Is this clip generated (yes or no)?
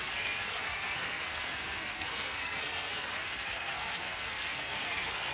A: yes